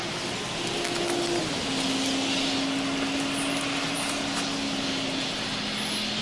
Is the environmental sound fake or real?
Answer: real